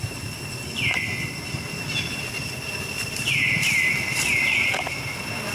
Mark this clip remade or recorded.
recorded